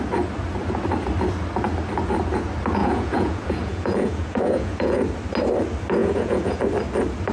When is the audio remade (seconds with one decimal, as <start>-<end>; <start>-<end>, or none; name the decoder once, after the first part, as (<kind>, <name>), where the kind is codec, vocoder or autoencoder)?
2.8-5.0 (vocoder, Vocos); 6.0-6.6